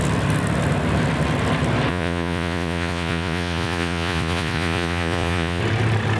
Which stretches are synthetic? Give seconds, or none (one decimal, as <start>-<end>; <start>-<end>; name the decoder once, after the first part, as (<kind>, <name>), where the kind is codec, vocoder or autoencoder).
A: 1.9-5.6 (vocoder, Vocos)